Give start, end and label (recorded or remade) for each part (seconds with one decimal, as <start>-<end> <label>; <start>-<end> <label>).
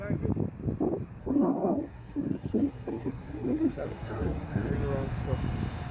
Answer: 0.0-1.2 recorded; 1.2-4.7 remade; 4.7-5.9 recorded